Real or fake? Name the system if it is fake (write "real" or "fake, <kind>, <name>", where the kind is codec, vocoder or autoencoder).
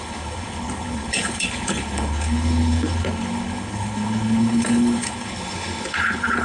fake, codec, HILCodec